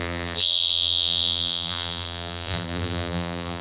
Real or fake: fake